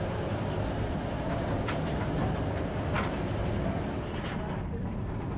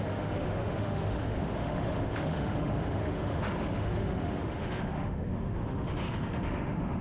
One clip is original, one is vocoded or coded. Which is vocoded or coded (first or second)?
second